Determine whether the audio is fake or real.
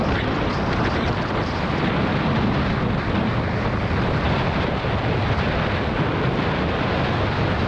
real